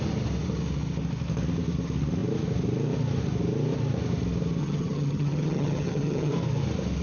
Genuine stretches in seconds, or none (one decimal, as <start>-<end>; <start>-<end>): 0.0-4.6; 6.3-7.0